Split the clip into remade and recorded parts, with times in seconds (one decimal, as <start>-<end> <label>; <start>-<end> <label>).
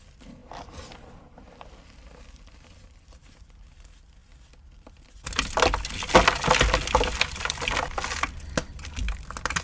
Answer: 0.0-9.6 recorded